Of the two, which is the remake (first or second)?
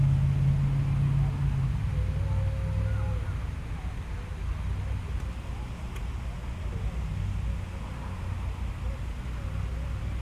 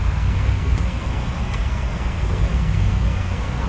second